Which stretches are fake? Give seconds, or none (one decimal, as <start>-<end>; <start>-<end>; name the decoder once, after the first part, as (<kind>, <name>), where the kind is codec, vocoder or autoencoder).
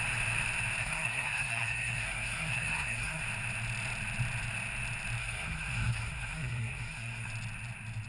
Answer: 0.8-3.2 (codec, SNAC); 5.2-7.3